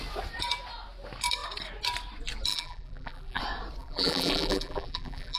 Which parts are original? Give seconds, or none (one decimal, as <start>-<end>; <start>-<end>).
0.0-2.5; 3.4-3.8